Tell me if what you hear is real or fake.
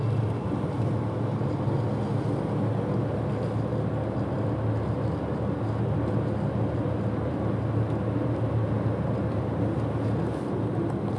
real